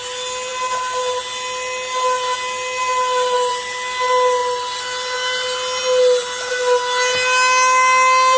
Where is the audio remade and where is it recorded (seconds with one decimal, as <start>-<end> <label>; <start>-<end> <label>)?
0.0-8.4 recorded